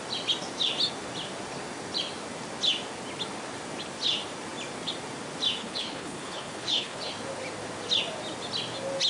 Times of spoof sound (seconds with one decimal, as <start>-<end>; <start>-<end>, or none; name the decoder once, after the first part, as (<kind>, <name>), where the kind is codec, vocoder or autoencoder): 5.6-7.1 (codec, HILCodec)